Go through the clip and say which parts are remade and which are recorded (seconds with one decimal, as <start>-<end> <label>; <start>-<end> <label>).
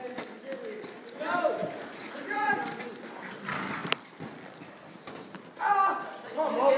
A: 0.0-1.6 recorded; 1.6-2.5 remade; 2.5-6.8 recorded